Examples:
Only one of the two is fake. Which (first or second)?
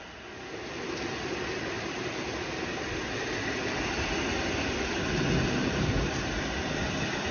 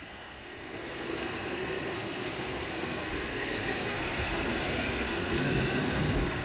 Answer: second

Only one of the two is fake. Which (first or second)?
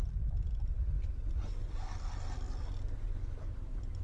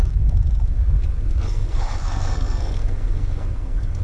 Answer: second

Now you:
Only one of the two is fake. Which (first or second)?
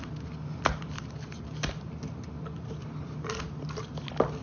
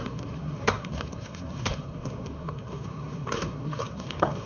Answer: second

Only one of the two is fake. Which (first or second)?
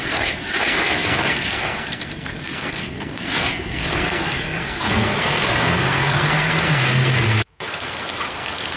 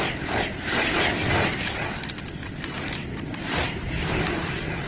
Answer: first